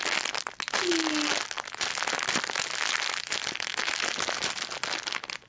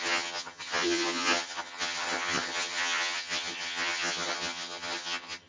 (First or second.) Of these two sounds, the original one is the first